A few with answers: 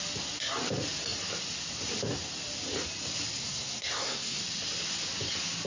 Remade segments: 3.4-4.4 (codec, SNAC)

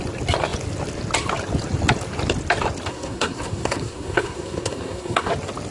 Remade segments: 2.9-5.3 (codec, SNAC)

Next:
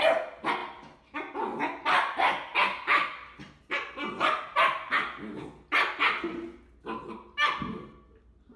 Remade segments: none

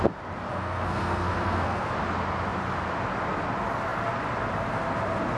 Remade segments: 0.5-1.9 (codec, SNAC)

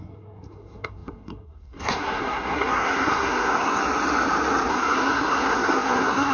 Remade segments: 0.0-3.8 (codec, SNAC); 4.7-6.3

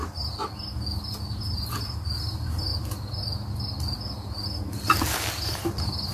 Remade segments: none

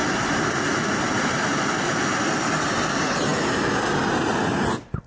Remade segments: none